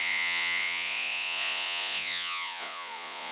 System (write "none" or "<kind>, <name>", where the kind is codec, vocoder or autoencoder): vocoder, Vocos